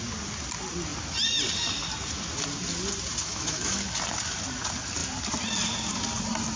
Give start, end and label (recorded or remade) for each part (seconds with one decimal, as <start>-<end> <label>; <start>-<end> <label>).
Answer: 0.0-3.2 recorded; 3.2-3.8 remade; 3.8-6.6 recorded